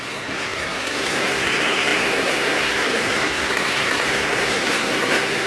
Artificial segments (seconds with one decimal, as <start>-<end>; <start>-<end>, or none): 0.0-5.5

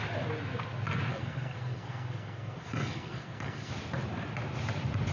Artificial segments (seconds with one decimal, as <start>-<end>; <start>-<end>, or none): 1.1-3.7

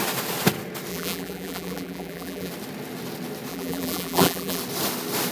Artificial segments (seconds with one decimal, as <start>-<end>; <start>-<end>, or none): 0.9-2.5; 3.5-4.6

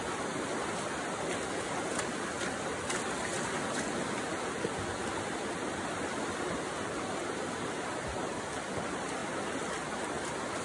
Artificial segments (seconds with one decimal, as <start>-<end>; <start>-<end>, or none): none

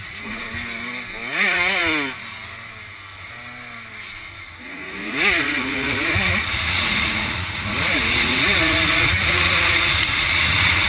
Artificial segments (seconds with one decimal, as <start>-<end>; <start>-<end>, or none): 0.0-0.4; 1.3-1.8; 4.6-10.9